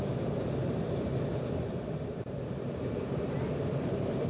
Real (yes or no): no